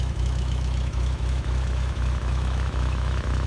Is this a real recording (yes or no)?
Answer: no